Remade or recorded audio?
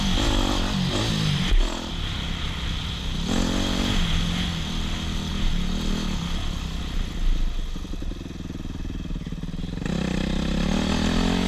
recorded